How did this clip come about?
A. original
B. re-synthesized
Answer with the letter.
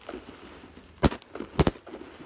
A